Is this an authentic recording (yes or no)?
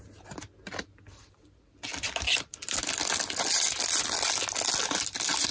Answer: yes